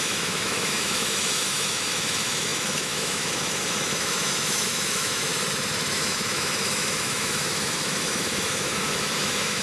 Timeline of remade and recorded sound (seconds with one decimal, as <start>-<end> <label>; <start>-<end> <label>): 0.0-5.3 remade; 5.3-5.9 recorded; 5.9-9.6 remade